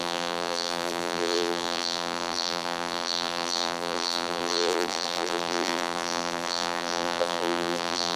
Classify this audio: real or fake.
fake